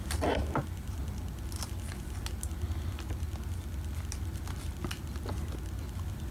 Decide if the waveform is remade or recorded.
recorded